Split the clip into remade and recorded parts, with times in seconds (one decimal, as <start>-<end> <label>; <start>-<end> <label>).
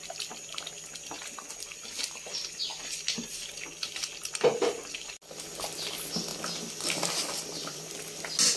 0.0-8.6 recorded